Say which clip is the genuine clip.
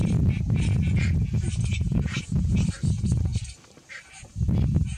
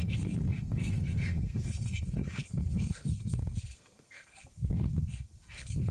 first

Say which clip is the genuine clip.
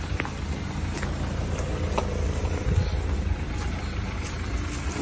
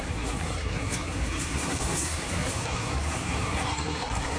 first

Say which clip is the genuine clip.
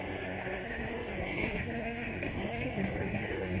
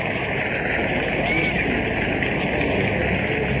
second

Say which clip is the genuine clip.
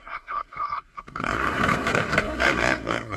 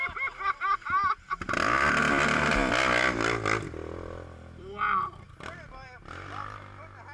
second